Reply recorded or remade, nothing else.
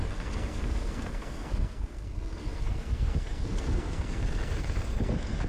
remade